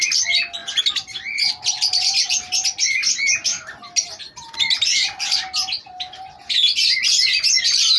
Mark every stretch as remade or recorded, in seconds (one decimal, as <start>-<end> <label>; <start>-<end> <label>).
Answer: 0.0-0.6 recorded; 0.6-1.5 remade; 1.5-8.0 recorded